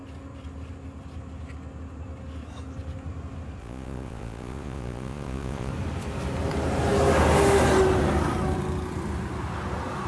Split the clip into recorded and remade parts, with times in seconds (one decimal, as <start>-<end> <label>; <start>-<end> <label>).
0.0-3.6 recorded; 3.6-5.7 remade; 5.7-10.1 recorded